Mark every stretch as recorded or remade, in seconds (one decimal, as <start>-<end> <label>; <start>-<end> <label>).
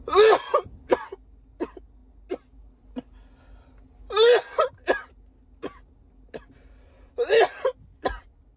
0.0-8.6 recorded